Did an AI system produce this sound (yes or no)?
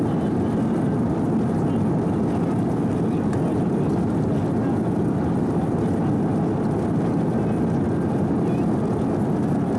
no